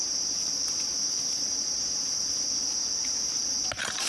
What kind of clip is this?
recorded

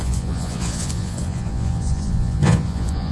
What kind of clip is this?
remade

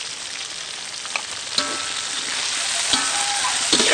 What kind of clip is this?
recorded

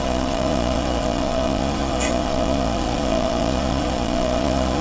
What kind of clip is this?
remade